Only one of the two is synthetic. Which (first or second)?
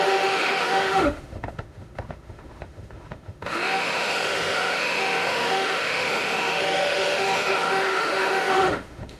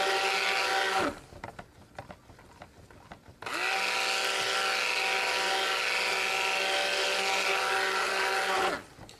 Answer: first